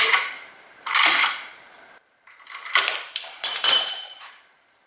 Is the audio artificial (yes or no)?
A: yes